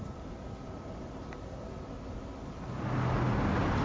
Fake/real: real